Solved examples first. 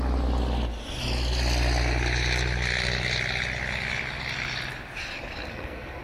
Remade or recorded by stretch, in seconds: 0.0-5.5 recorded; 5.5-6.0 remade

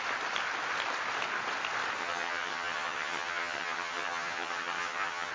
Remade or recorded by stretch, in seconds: 0.0-2.0 recorded; 2.0-5.3 remade

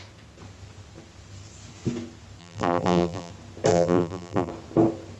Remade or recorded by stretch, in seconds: 0.0-2.4 recorded; 2.4-3.3 remade; 3.3-3.7 recorded; 3.7-4.5 remade; 4.5-5.2 recorded

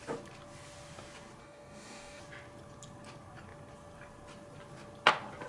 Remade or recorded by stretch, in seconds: 0.0-1.4 recorded; 1.4-2.2 remade; 2.2-5.5 recorded

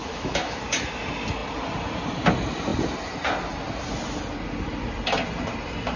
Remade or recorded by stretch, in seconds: 0.0-0.6 remade; 0.6-6.0 recorded